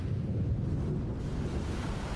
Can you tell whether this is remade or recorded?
recorded